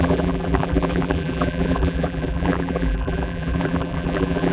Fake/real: fake